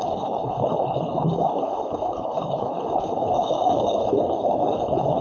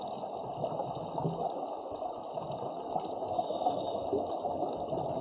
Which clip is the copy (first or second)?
first